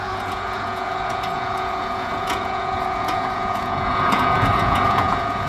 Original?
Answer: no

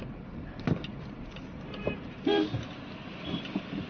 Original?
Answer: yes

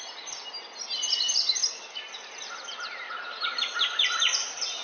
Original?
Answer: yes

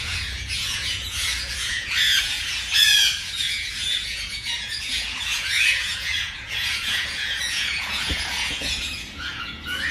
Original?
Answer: no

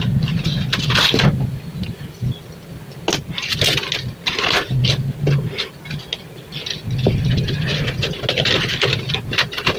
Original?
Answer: yes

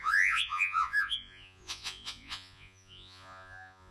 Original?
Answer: no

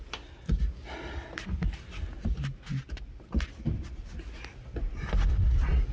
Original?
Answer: yes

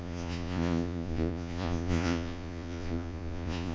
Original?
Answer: no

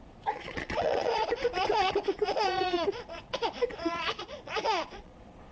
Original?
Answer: no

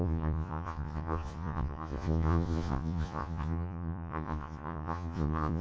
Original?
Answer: no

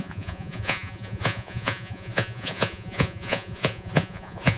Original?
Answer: no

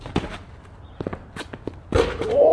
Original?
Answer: yes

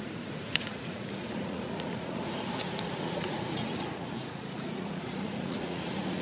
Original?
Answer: no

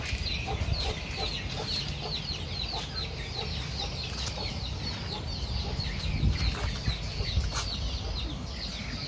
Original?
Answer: yes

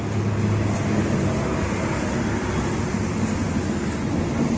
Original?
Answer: yes